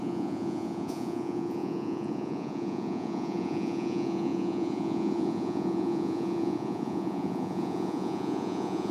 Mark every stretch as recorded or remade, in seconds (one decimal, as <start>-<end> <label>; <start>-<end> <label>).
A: 0.0-8.9 remade